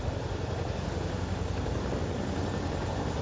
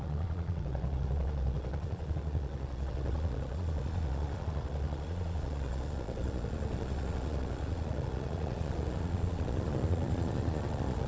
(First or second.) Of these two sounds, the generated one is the second